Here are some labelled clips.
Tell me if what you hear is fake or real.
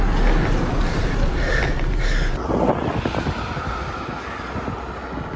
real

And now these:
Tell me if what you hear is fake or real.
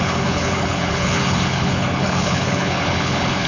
fake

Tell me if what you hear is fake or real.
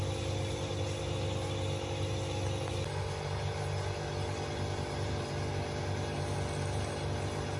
real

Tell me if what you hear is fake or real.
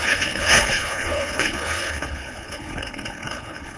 fake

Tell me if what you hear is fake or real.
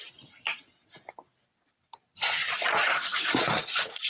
real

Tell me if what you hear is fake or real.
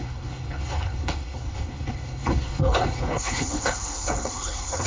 fake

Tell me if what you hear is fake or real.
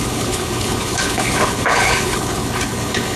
fake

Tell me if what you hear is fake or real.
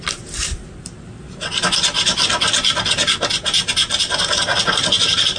real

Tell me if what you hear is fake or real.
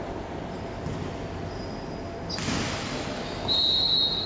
real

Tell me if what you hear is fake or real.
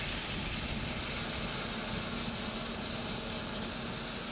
real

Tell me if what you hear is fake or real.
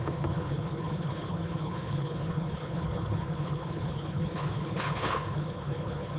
fake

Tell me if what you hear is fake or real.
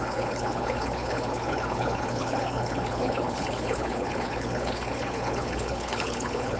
fake